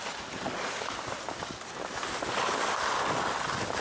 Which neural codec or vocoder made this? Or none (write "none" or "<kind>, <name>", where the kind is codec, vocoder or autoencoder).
none